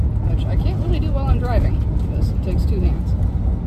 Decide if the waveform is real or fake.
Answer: real